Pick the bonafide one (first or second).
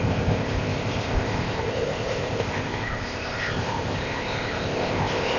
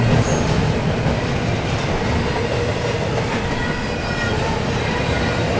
second